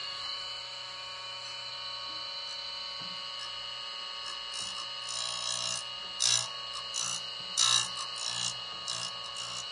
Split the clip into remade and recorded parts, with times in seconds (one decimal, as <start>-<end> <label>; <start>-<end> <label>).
0.0-1.7 remade; 1.7-9.7 recorded